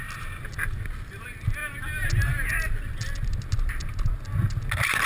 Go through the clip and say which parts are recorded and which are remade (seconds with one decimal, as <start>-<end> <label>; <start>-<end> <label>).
0.0-5.1 recorded